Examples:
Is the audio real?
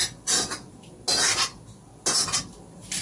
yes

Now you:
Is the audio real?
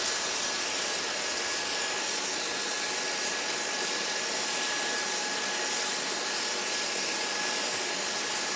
yes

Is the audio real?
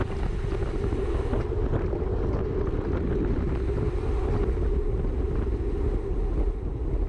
yes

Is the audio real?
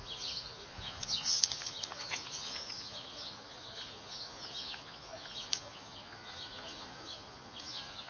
no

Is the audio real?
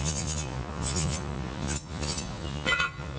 no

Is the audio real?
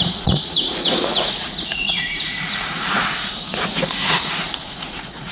no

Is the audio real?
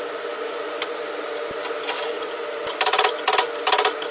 yes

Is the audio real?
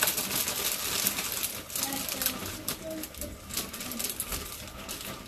yes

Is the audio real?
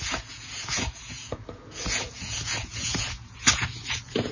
no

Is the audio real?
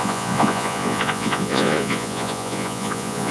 no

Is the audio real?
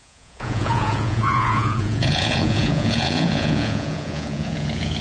no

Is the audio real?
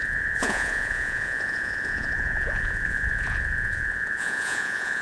no